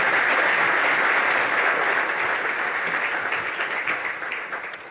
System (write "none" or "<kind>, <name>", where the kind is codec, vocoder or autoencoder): none